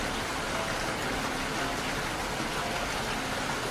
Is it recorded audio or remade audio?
recorded